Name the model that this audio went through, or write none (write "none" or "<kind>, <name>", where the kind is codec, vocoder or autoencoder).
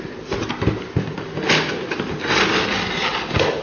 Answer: none